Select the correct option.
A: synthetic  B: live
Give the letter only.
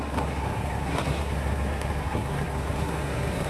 A